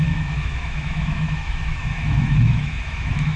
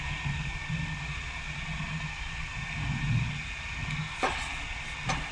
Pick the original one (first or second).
second